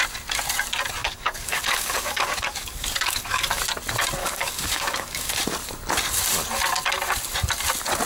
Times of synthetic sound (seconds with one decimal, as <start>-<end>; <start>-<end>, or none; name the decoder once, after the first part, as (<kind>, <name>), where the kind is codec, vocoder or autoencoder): 1.0-3.6 (codec, DAC); 4.2-5.4